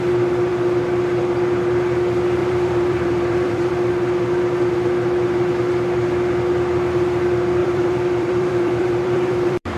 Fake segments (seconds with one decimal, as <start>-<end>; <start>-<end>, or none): 2.4-3.7; 7.6-9.8